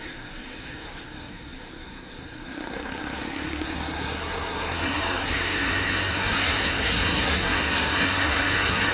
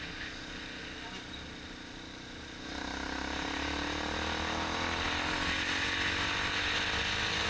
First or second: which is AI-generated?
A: first